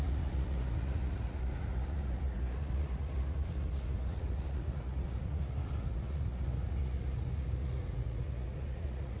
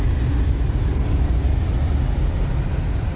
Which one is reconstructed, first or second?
first